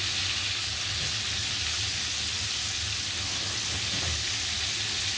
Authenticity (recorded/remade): recorded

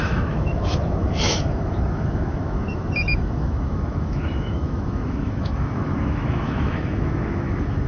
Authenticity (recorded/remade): remade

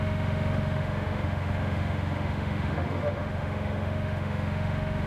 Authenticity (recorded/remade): remade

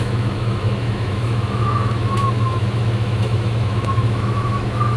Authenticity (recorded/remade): remade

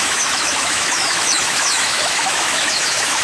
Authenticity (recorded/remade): remade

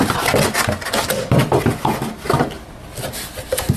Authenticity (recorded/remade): recorded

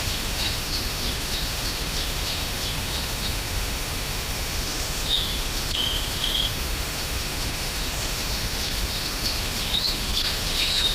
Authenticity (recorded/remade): remade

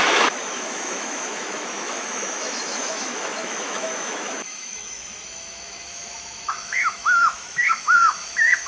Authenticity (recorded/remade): remade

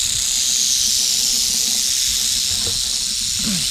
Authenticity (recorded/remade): recorded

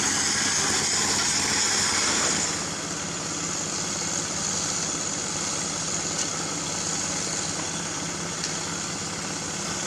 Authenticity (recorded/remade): recorded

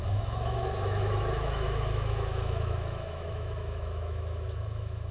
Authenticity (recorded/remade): remade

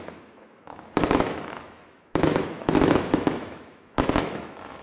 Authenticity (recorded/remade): remade